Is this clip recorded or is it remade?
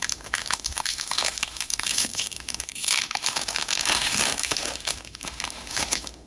remade